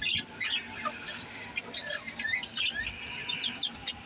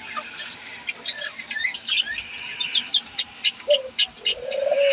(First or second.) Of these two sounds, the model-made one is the second